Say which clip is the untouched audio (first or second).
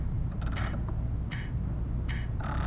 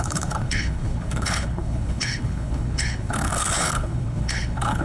first